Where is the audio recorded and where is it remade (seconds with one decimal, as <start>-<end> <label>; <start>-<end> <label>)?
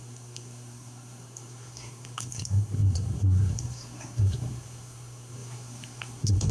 0.0-6.5 remade